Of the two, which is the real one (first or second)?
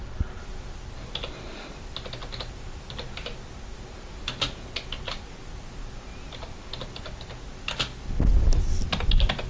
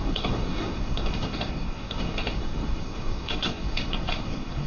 first